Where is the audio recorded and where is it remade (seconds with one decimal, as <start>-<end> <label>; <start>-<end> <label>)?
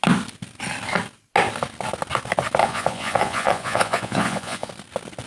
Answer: 0.0-2.6 recorded; 2.6-4.7 remade; 4.7-5.3 recorded